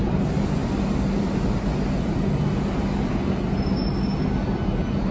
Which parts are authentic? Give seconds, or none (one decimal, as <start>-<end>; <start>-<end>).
0.0-5.1